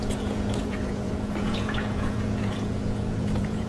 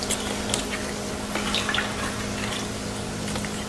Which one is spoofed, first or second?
first